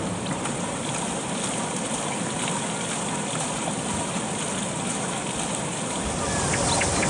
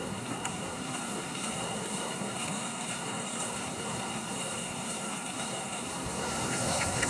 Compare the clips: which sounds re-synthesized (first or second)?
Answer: second